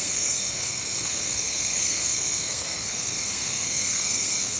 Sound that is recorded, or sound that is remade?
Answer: remade